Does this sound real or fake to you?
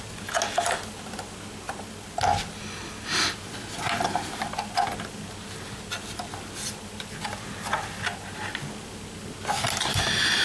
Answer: real